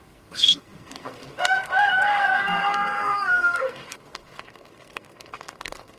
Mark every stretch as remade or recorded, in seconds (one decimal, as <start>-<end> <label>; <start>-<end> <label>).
0.0-6.0 remade